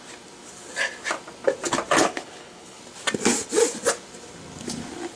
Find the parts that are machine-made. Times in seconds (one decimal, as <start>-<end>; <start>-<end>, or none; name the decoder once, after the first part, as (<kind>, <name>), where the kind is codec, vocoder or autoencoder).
2.0-2.8 (codec, HILCodec)